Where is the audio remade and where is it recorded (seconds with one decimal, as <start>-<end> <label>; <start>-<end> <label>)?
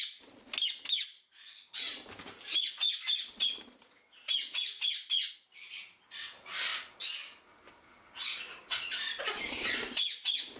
0.0-10.6 recorded